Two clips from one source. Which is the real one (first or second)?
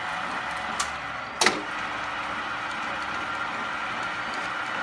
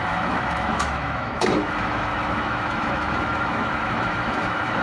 first